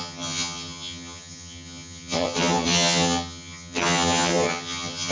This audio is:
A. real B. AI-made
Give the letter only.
B